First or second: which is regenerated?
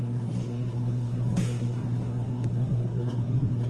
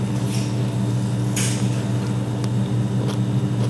first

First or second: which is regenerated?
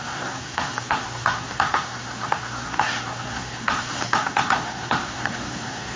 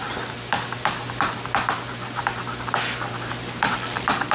first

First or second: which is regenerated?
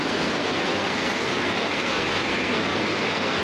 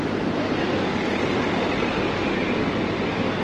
first